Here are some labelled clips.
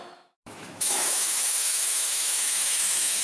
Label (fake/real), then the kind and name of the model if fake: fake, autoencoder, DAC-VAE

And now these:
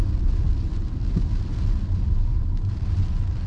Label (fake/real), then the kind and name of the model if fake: real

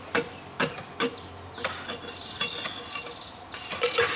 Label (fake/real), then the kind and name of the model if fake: real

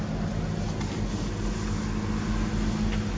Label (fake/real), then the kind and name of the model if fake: real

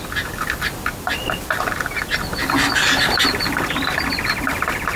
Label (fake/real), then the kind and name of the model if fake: real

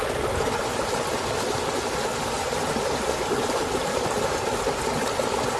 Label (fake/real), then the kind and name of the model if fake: real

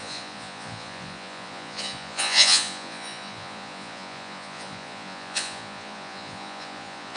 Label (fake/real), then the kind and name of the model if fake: fake, vocoder, Vocos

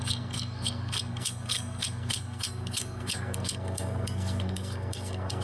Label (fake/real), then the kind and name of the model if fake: fake, codec, SNAC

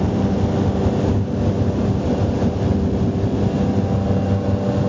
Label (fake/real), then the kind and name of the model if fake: real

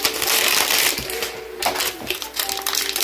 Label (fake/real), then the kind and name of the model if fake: real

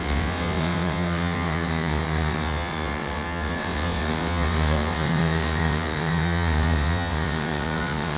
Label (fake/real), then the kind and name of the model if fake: fake, vocoder, WaveNeXt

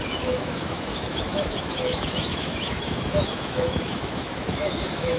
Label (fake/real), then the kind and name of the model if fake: fake, autoencoder, DAC-VAE